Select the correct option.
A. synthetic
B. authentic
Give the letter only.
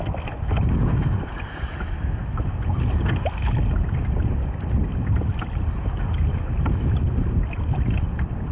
B